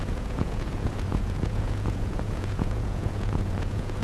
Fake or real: fake